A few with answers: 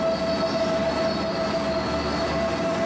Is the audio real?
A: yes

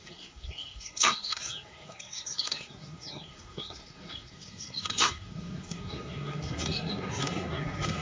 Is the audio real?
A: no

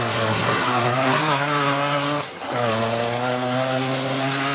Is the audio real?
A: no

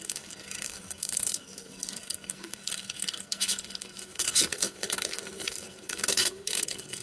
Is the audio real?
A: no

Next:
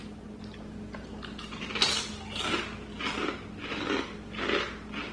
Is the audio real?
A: yes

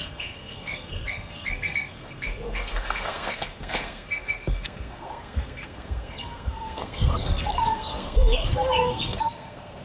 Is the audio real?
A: no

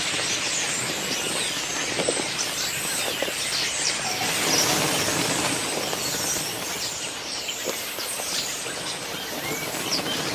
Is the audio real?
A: yes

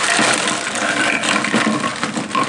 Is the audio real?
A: yes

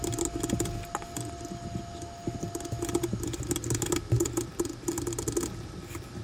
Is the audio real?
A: yes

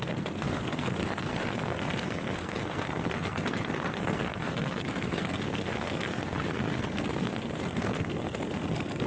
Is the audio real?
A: no